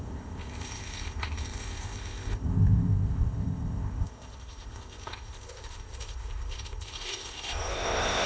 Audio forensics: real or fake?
fake